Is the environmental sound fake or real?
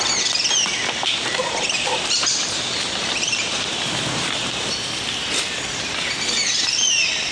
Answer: fake